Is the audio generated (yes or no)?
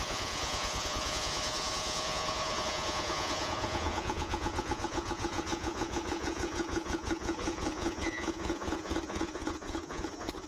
yes